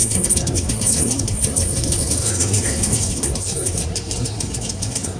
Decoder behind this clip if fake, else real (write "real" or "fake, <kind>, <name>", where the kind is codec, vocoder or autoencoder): fake, codec, SNAC